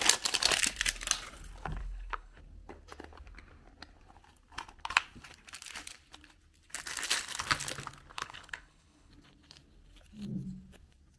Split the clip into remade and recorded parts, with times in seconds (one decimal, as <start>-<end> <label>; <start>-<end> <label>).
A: 0.0-1.8 recorded; 1.8-2.4 remade; 2.4-8.1 recorded; 8.1-9.1 remade; 9.1-11.2 recorded